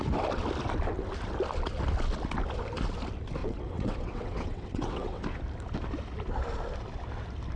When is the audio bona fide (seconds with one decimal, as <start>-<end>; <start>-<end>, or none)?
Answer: 0.0-3.4; 5.2-7.6